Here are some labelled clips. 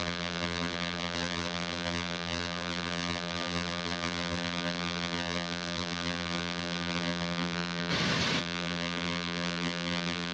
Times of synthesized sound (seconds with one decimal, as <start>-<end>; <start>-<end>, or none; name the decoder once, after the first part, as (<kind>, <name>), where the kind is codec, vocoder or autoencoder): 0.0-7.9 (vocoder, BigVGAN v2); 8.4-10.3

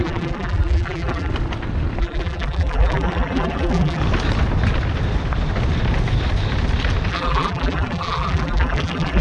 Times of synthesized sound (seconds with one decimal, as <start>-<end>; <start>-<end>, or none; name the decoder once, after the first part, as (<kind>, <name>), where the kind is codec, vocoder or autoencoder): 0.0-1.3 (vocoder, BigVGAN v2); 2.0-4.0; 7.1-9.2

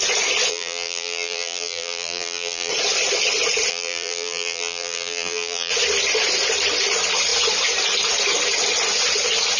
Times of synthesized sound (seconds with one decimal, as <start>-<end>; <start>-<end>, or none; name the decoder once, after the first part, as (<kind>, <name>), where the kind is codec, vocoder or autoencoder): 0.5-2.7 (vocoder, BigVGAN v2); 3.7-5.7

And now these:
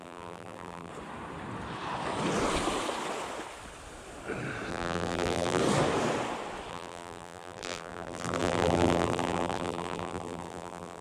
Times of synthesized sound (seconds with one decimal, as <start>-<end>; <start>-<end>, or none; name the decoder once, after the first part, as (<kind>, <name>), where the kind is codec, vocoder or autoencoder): 0.0-0.9 (vocoder, BigVGAN v2); 4.7-5.6; 6.7-11.0

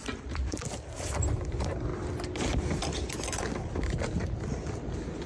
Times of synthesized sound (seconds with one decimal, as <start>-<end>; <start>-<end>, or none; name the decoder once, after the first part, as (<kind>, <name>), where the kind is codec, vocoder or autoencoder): 0.0-1.9 (vocoder, BigVGAN v2)

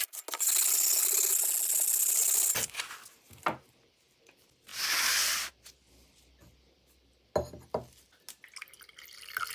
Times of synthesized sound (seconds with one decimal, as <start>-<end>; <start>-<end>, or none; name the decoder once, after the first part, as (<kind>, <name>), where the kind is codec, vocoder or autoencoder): none